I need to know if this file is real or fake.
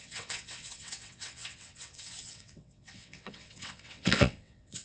fake